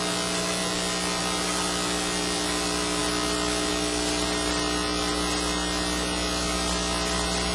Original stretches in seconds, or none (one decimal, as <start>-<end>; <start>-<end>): 0.0-7.5